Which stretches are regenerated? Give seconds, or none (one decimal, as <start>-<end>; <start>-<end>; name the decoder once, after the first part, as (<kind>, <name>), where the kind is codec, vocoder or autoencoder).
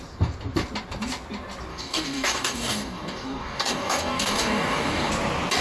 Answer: 1.7-5.1 (codec, DAC)